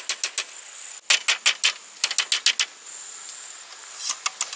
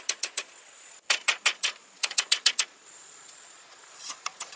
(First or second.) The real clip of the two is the first